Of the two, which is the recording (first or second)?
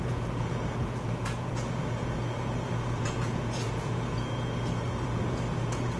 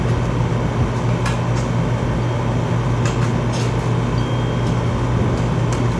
second